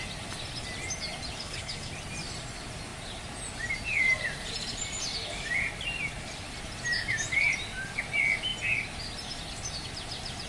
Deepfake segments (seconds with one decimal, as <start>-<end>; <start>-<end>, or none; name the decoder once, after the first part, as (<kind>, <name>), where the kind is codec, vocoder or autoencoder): 1.4-1.9 (codec, HILCodec)